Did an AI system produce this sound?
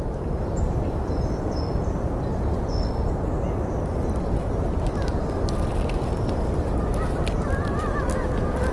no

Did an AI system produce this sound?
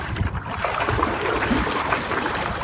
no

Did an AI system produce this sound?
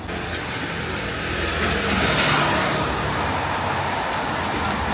no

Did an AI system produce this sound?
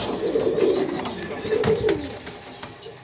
no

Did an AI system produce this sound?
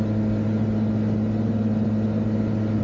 no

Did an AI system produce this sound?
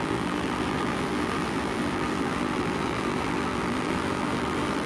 yes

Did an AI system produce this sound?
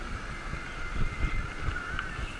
no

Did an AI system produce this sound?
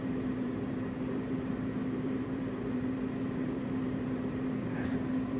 yes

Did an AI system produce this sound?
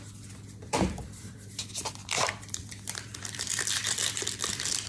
yes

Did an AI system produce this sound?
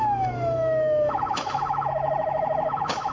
yes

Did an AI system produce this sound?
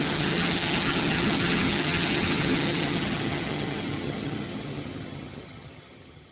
yes